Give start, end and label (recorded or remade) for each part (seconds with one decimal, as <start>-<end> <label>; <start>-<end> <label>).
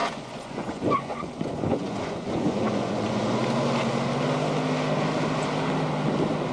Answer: 0.0-3.4 remade; 3.4-6.5 recorded